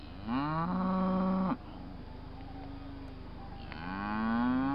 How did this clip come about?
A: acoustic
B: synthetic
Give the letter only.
A